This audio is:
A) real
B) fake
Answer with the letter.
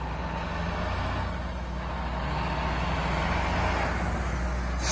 A